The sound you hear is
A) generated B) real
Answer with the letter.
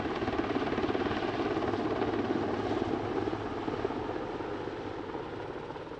B